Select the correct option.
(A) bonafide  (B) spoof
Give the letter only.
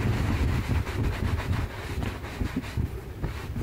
A